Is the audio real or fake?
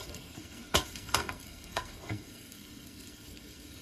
fake